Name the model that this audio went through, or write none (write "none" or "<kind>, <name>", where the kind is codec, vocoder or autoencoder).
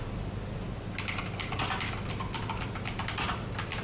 none